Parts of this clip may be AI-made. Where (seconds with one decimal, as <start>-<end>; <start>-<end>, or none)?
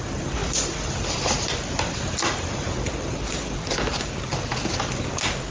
none